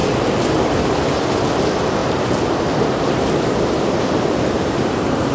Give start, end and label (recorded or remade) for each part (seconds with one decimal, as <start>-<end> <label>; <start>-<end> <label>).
0.0-2.0 recorded; 2.0-5.3 remade